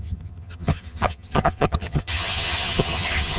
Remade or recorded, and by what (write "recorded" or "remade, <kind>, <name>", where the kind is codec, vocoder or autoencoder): remade, vocoder, HiFi-GAN